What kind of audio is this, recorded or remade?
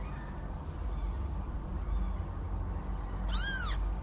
recorded